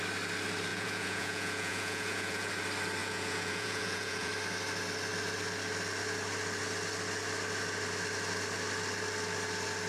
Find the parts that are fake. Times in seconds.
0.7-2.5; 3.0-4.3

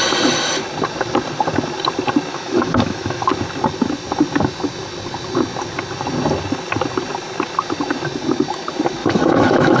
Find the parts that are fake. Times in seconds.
2.3-3.3; 9.0-9.8

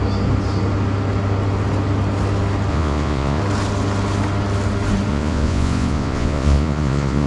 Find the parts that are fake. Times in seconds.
2.7-3.4; 5.1-7.3

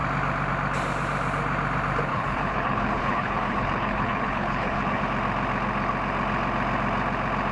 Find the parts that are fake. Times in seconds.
2.1-5.0

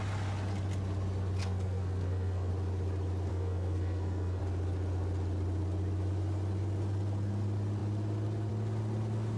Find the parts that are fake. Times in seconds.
1.4-2.5; 3.3-4.4